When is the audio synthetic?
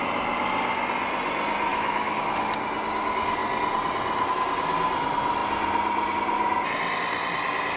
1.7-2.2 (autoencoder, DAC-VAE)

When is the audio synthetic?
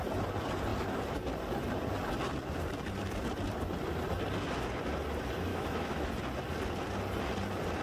5.5-6.1 (autoencoder, DAC-VAE)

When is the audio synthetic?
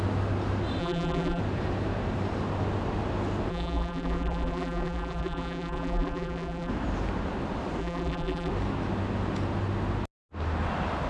0.8-1.4 (vocoder, BigVGAN v2); 3.5-6.7; 7.8-8.5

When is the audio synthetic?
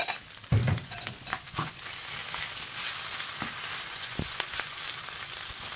0.6-1.8 (vocoder, Vocos); 3.9-4.8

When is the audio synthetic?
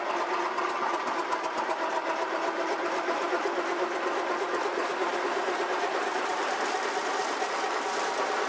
4.7-6.5 (vocoder, BigVGAN v2)